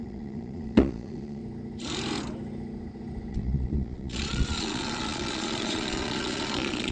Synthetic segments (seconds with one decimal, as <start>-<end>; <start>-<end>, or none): 0.0-1.4; 3.3-6.9